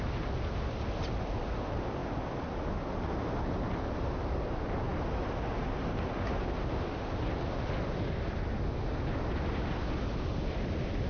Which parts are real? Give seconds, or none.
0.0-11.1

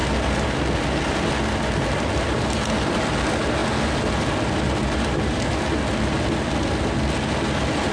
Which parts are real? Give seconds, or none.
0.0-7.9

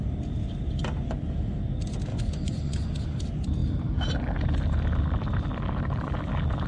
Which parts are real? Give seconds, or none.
0.0-2.1; 2.9-6.7

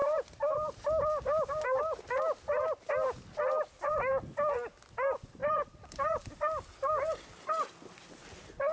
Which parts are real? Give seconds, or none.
0.0-8.7

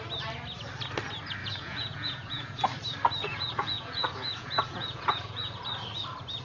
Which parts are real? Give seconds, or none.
0.0-1.4; 2.6-3.2; 5.6-6.4

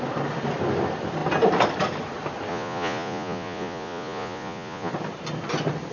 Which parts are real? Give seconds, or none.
0.0-2.5; 4.9-5.9

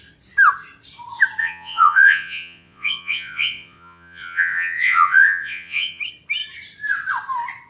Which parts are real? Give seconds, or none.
0.0-1.4; 6.0-7.7